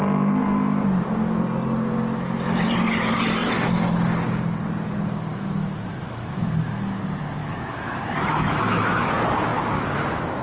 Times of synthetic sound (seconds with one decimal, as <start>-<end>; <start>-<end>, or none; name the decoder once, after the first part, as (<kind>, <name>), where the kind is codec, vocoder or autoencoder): 5.3-7.0 (autoencoder, DAC-VAE); 7.4-9.1